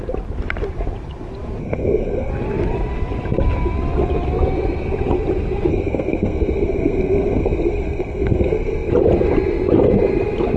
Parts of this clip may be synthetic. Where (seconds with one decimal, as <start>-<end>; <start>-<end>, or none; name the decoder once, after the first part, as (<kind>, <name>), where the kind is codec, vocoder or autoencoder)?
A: 1.6-2.3 (codec, SNAC); 5.7-8.9